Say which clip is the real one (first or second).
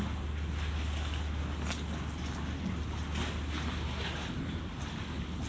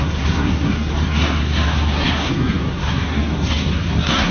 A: first